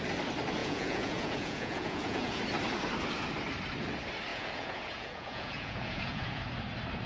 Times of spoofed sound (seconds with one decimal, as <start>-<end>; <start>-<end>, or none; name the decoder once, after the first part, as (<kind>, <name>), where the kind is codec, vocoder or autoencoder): 0.6-2.4 (vocoder, Vocos); 4.3-6.4